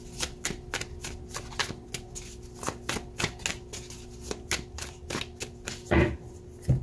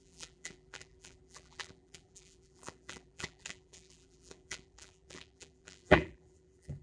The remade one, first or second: second